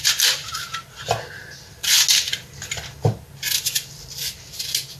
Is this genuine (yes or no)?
yes